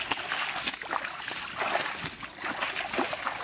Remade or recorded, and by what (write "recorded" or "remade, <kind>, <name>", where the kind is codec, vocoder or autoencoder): recorded